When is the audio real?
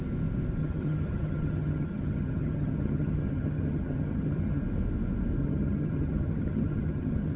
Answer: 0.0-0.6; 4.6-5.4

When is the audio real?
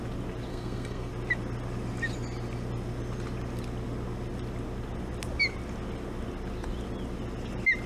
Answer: 0.0-0.5; 1.1-7.9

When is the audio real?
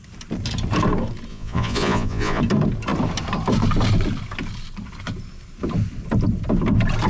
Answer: 0.0-1.3; 2.4-7.1